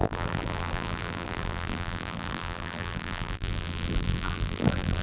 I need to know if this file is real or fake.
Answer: fake